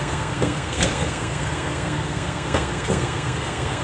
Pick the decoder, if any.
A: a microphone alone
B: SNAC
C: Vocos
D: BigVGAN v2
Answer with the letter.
B